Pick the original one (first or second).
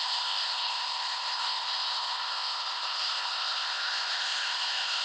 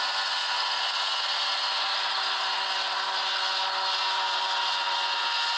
second